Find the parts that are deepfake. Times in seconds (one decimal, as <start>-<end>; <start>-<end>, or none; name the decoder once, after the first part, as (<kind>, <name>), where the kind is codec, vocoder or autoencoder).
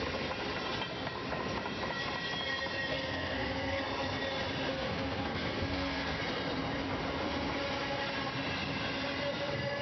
2.9-3.8 (codec, SNAC); 4.7-6.2